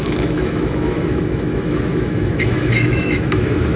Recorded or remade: remade